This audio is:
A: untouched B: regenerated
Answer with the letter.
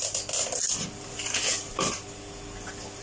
A